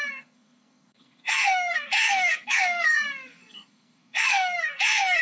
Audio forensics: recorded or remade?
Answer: remade